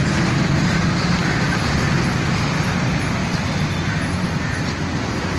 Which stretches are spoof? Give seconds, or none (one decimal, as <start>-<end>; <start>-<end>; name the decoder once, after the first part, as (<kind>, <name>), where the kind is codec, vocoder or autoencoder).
none